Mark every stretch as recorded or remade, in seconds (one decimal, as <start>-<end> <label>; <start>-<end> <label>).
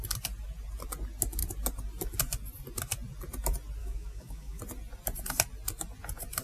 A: 0.0-3.8 recorded; 3.8-4.6 remade; 4.6-6.4 recorded